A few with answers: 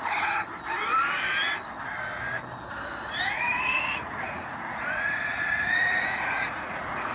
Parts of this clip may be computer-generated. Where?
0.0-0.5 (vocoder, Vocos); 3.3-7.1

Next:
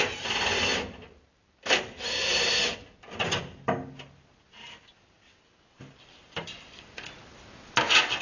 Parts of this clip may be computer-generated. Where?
none

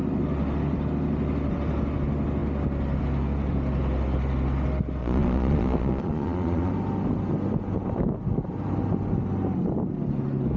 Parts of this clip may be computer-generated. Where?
5.0-6.7 (vocoder, Vocos)

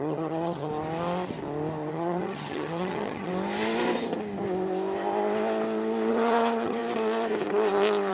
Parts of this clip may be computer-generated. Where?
0.0-0.7 (vocoder, HiFi-GAN); 1.9-3.3; 6.1-6.8

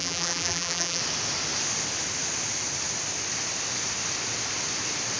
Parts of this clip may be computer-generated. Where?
0.0-1.0 (vocoder, BigVGAN v2)

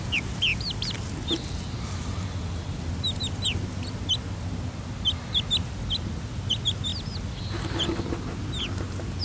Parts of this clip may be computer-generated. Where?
none

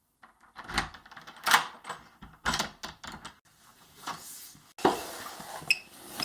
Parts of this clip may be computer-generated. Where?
3.7-4.5 (vocoder, Vocos)

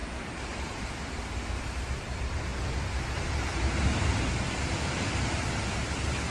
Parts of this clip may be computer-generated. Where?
0.0-1.1 (vocoder, BigVGAN v2)